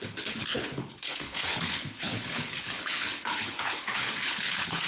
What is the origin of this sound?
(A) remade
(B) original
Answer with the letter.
A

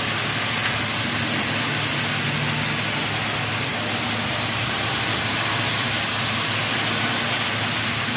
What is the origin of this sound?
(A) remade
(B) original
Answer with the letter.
B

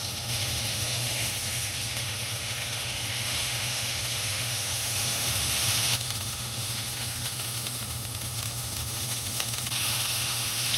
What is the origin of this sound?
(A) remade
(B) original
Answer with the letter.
A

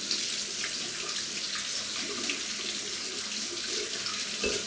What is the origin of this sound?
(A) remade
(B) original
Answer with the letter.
B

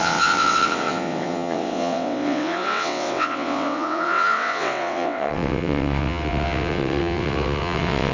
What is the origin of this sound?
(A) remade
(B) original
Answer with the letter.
A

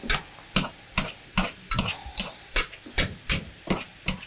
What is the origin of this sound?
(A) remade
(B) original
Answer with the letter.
B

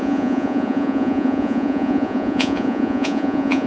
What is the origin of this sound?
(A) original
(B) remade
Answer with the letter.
B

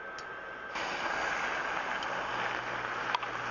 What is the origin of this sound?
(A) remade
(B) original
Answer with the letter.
B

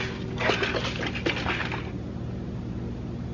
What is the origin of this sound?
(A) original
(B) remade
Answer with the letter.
A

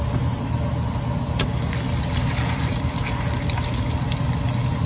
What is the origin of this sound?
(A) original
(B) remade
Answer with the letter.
A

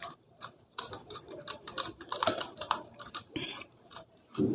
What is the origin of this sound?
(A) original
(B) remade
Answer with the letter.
B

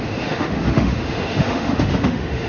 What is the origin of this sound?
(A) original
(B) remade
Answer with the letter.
B